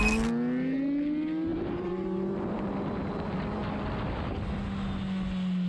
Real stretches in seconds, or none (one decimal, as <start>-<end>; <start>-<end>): 0.0-1.5; 3.6-5.7